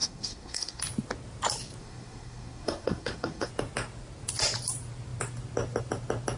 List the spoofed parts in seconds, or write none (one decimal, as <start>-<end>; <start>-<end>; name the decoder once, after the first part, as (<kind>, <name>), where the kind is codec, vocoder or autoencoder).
0.0-0.8 (codec, SNAC); 1.8-3.5